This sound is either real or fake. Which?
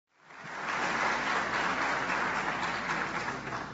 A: real